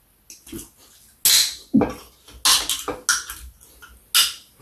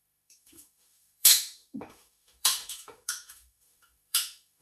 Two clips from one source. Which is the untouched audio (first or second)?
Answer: first